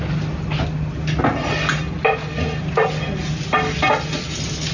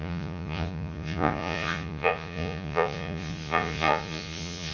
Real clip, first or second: first